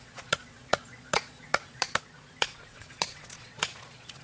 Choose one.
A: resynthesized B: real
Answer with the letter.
A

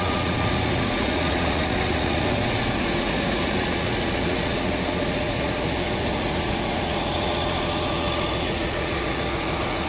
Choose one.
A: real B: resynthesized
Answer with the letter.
B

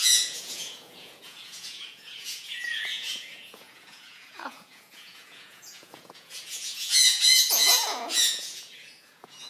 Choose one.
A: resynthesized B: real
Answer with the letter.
A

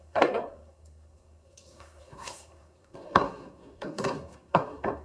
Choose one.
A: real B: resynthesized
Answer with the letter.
B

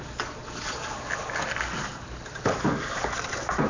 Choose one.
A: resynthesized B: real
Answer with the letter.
B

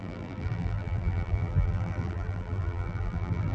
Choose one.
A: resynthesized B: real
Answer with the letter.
A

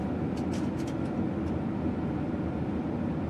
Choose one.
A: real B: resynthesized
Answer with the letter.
A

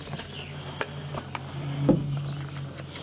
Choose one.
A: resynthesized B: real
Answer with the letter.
B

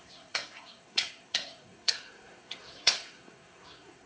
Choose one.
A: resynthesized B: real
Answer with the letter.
A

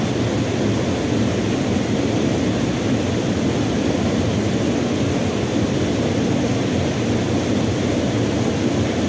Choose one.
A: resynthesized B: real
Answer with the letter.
B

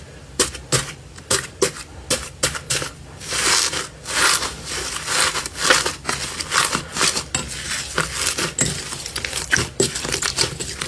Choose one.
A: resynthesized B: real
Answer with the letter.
B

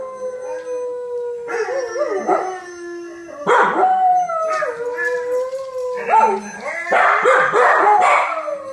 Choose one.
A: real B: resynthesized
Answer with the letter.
A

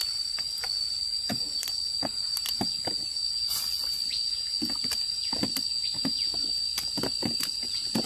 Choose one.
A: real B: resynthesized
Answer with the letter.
A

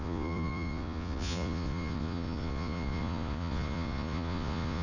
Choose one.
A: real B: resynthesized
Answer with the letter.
B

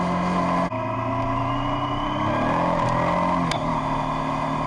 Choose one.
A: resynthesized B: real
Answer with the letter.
B